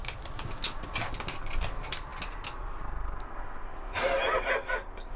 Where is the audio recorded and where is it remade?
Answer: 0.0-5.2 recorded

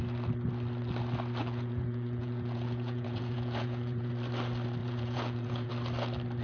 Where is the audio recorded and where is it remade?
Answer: 0.0-1.4 recorded; 1.4-4.1 remade; 4.1-4.8 recorded; 4.8-5.7 remade; 5.7-6.4 recorded